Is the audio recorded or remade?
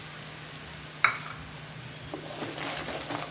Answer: recorded